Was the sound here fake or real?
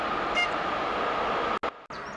real